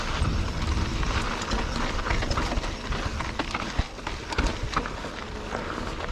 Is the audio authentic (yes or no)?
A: yes